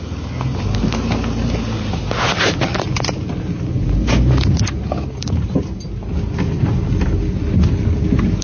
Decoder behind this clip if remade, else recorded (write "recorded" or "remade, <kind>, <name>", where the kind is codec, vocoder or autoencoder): recorded